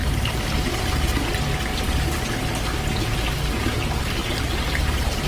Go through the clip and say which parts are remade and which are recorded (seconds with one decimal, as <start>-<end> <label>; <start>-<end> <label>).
0.0-0.9 remade; 0.9-1.7 recorded; 1.7-2.5 remade; 2.5-4.2 recorded; 4.2-4.8 remade; 4.8-5.3 recorded